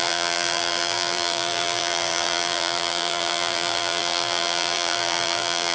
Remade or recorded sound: remade